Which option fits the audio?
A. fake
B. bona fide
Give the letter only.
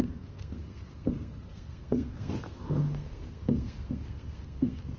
A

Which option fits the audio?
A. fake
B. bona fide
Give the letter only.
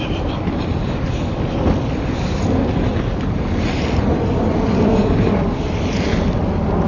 B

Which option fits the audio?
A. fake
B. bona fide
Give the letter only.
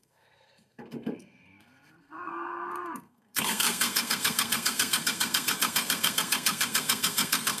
A